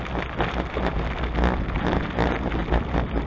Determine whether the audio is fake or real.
real